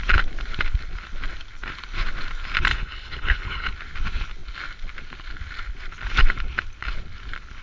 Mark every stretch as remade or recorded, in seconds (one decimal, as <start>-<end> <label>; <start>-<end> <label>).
0.0-2.7 recorded; 2.7-3.7 remade; 3.7-7.6 recorded